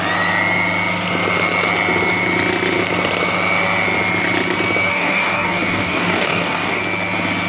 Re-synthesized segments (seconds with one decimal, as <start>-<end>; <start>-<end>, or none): 4.9-6.8